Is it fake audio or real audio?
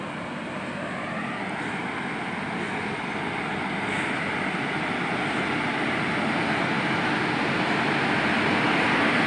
real